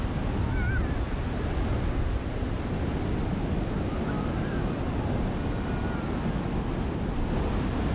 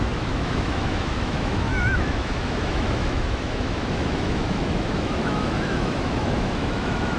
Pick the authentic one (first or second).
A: first